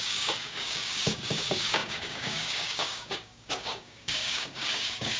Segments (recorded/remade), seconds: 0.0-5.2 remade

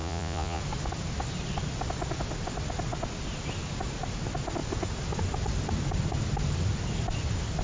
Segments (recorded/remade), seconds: 0.0-0.6 remade; 0.6-7.6 recorded

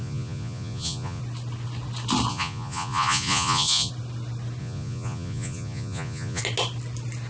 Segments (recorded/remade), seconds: 0.0-1.2 remade; 1.2-2.3 recorded; 2.3-3.9 remade; 3.9-4.6 recorded; 4.6-6.4 remade; 6.4-7.3 recorded